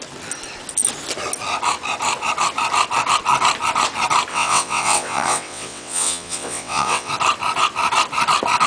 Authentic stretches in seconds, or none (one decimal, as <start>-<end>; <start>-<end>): 0.0-4.3; 7.1-8.7